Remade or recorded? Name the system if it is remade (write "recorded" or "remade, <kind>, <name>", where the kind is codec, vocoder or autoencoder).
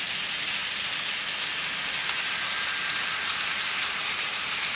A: recorded